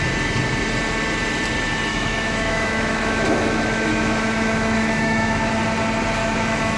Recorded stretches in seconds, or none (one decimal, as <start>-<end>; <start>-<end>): 0.0-1.9; 5.5-6.2